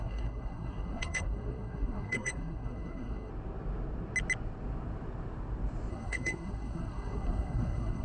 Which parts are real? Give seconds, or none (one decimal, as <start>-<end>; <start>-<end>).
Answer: 3.3-5.9